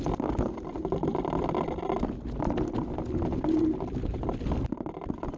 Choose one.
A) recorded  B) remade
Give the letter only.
A